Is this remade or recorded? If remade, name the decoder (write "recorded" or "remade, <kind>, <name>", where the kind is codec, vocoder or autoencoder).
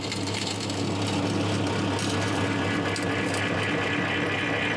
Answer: recorded